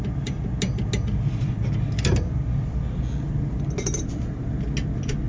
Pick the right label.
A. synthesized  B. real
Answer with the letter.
B